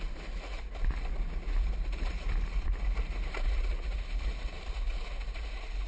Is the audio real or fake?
real